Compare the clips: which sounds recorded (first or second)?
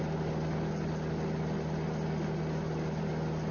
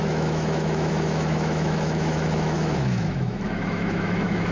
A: first